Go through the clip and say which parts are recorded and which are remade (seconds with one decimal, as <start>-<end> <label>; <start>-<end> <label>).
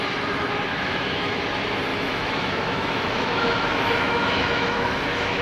0.0-0.7 recorded; 0.7-1.4 remade; 1.4-1.9 recorded; 1.9-5.4 remade